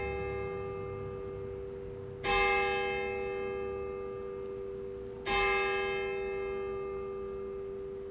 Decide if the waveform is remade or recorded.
recorded